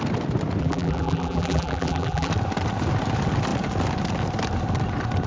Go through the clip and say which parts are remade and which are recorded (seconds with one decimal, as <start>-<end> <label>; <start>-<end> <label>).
0.0-0.6 recorded; 0.6-2.3 remade; 2.3-5.3 recorded

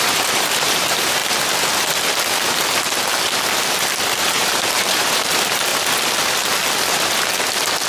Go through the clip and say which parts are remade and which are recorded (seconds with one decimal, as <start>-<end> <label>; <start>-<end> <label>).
0.0-1.2 remade; 1.2-4.2 recorded; 4.2-5.7 remade; 5.7-7.9 recorded

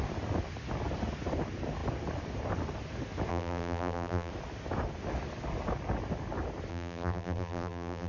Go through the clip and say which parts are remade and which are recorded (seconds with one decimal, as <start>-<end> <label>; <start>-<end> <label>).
0.0-3.3 recorded; 3.3-4.3 remade; 4.3-6.7 recorded; 6.7-8.1 remade

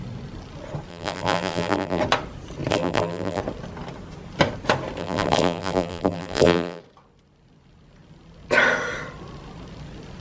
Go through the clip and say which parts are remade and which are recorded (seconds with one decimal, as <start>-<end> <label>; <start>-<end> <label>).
0.0-0.9 recorded; 0.9-2.0 remade; 2.0-2.7 recorded; 2.7-3.4 remade; 3.4-5.0 recorded; 5.0-6.8 remade; 6.8-10.2 recorded

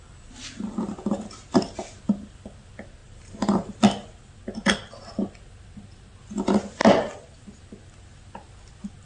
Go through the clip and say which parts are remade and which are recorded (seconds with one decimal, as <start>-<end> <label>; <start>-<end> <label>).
0.0-3.0 recorded; 3.0-3.8 remade; 3.8-9.1 recorded

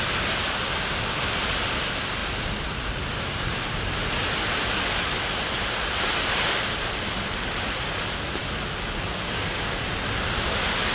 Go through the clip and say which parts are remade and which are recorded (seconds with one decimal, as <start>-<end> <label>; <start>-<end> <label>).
0.0-10.9 recorded